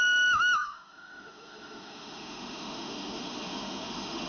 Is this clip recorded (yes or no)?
no